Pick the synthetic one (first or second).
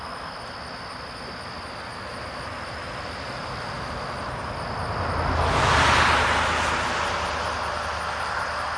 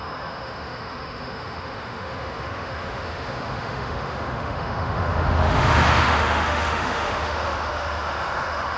second